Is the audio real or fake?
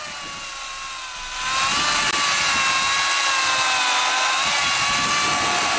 real